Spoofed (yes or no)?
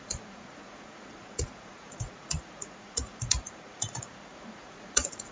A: yes